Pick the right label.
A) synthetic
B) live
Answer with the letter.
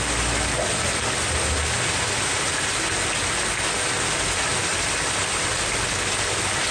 B